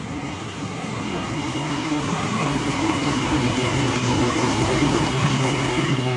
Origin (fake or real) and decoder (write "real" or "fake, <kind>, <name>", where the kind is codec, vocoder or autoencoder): fake, codec, SNAC